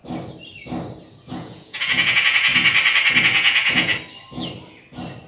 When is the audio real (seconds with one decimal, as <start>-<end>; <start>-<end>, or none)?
0.0-1.3; 2.5-3.2; 3.9-5.3

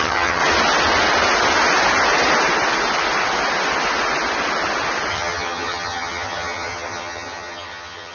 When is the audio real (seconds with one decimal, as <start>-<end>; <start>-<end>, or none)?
0.4-5.1